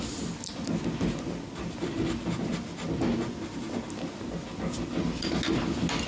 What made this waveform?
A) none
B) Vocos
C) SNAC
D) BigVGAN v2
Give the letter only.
A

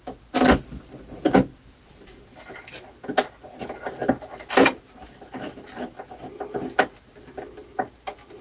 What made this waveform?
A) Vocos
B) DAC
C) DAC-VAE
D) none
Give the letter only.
D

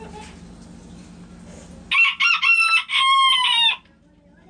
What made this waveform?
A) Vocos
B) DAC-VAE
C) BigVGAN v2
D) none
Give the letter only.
D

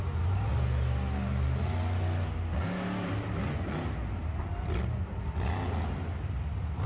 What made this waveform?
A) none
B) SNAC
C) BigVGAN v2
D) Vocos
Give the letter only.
A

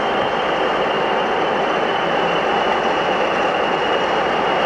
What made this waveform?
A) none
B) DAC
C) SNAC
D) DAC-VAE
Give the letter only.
A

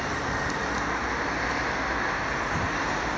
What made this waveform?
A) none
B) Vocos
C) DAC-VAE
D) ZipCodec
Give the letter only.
A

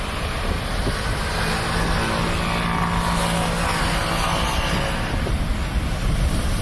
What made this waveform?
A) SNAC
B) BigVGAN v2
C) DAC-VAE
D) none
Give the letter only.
D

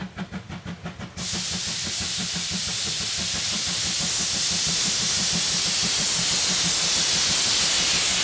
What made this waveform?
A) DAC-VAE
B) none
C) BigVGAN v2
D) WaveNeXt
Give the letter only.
B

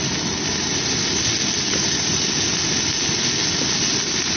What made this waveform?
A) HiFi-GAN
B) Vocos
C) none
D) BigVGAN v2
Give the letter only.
C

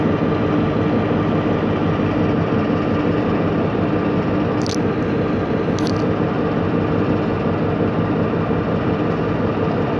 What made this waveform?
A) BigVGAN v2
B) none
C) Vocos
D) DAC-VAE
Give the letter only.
B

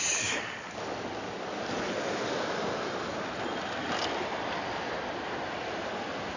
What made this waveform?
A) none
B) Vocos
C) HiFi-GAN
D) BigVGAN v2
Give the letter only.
A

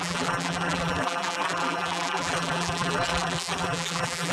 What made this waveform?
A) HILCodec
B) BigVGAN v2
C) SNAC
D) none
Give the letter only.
B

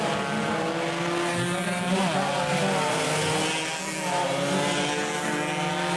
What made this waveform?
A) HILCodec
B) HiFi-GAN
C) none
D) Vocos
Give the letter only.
C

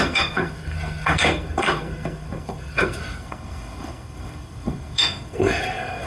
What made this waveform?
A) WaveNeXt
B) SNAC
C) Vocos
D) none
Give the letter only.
B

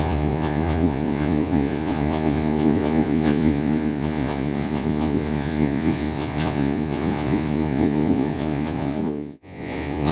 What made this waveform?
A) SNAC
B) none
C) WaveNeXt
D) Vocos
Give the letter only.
D